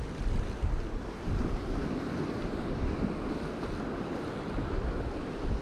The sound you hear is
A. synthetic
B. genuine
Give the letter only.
B